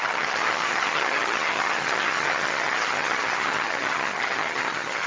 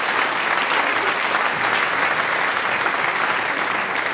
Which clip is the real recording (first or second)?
second